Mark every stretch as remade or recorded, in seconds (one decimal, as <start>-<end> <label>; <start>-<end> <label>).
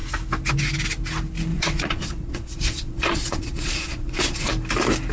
0.0-1.5 recorded; 1.5-4.5 remade; 4.5-5.1 recorded